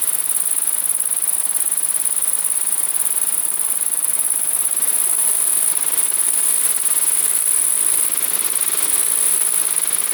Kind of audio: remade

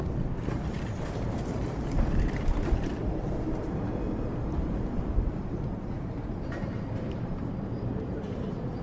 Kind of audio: remade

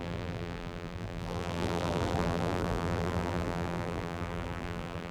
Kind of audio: remade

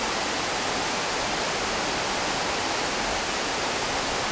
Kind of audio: recorded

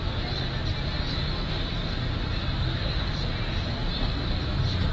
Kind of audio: recorded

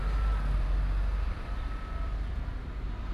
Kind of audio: remade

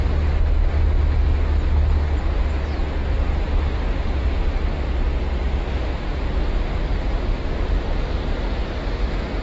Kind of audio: recorded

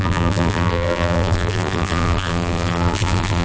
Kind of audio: remade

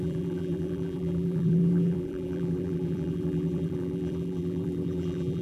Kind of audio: remade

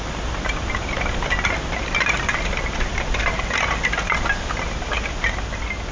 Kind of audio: recorded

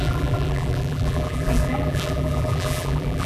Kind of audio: remade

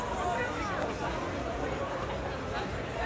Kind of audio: remade